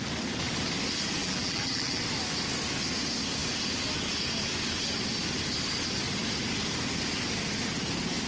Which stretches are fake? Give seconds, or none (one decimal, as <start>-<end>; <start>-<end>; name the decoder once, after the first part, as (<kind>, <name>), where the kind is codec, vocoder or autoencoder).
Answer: 1.2-2.0 (vocoder, BigVGAN v2)